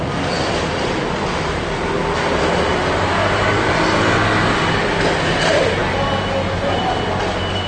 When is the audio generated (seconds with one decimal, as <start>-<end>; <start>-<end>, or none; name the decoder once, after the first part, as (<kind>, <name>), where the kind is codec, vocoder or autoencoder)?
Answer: none